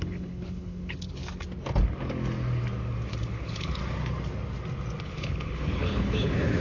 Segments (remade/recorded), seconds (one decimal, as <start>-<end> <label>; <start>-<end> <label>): 0.0-1.2 remade; 1.2-3.1 recorded; 3.1-3.8 remade; 3.8-5.0 recorded; 5.0-6.6 remade